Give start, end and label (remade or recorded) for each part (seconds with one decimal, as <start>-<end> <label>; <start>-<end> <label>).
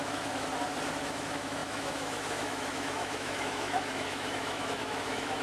0.0-0.5 remade; 0.5-1.0 recorded; 1.0-5.4 remade